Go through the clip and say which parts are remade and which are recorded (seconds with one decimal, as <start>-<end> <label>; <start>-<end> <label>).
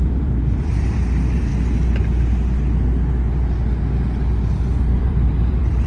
0.0-1.5 remade; 1.5-5.0 recorded; 5.0-5.9 remade